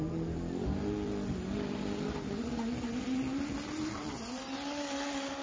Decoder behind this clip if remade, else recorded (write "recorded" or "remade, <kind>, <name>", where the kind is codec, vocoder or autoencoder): recorded